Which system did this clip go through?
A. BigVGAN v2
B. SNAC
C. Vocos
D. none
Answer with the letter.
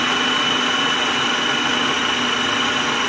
D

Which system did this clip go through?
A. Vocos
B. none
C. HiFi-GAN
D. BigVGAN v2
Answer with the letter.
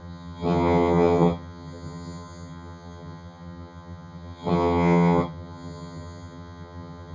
C